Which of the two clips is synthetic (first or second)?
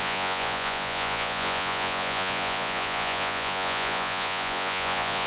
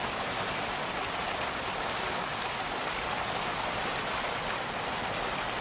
first